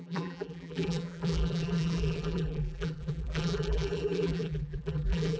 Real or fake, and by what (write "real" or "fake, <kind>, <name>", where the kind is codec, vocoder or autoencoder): fake, vocoder, BigVGAN v2